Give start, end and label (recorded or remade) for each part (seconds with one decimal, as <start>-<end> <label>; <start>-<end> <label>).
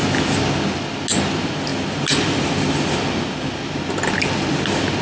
0.0-5.0 recorded